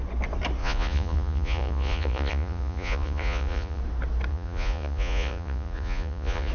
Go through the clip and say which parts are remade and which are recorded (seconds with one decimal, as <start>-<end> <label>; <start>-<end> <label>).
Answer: 0.0-0.6 recorded; 0.6-3.8 remade; 3.8-4.3 recorded; 4.3-6.5 remade